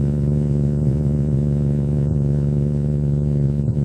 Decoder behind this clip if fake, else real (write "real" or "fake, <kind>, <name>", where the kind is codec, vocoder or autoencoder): fake, vocoder, Vocos